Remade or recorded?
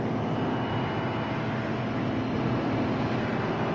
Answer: recorded